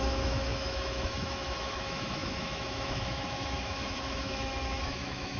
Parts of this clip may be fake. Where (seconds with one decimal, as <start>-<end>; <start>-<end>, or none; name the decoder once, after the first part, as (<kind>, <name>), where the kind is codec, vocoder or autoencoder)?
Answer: 0.0-5.4 (autoencoder, DAC-VAE)

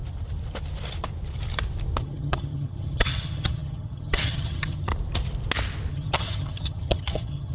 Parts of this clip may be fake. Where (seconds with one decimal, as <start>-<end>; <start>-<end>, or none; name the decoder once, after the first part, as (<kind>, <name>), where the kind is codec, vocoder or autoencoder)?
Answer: 2.0-4.9 (vocoder, HiFi-GAN); 5.9-7.5

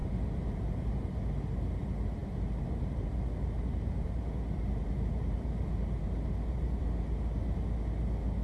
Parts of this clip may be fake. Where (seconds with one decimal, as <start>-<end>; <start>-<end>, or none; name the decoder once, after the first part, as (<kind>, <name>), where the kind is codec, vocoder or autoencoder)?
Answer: 0.0-1.0 (vocoder, BigVGAN v2); 2.2-6.8

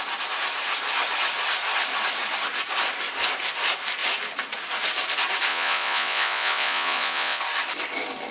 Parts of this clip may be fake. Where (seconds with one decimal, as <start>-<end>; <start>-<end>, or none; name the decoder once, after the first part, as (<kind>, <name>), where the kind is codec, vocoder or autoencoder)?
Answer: 5.5-7.4 (vocoder, Vocos)

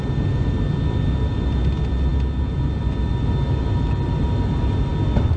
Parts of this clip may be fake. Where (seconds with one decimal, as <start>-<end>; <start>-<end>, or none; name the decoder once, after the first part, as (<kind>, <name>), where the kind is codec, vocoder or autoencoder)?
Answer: none

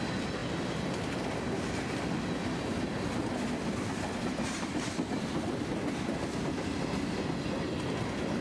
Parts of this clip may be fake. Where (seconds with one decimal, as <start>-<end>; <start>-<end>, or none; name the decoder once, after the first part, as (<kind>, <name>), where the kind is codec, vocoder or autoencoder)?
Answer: none

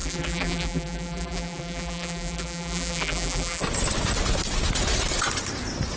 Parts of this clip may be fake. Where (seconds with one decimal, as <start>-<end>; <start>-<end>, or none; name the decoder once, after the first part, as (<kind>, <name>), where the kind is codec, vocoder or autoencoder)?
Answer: 0.0-3.6 (vocoder, BigVGAN v2)

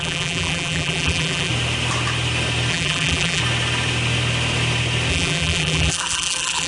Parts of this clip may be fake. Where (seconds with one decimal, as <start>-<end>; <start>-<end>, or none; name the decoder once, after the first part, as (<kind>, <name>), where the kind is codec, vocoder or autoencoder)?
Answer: 0.0-1.5 (vocoder, BigVGAN v2); 2.7-3.4; 5.1-6.7